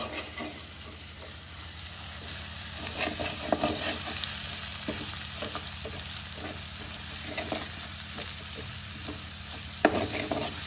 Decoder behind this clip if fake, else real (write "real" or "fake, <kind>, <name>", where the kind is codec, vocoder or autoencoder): real